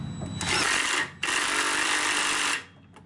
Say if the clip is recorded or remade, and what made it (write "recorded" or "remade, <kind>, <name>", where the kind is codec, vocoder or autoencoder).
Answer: recorded